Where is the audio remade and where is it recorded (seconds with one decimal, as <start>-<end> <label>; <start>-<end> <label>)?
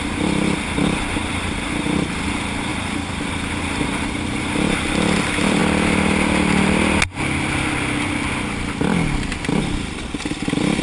0.0-5.6 remade; 5.6-9.6 recorded; 9.6-10.8 remade